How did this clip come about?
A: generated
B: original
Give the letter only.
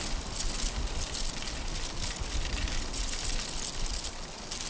B